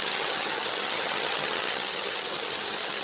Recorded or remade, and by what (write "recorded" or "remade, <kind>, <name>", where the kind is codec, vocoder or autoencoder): remade, vocoder, HiFi-GAN